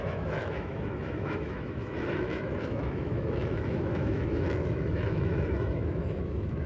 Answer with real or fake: fake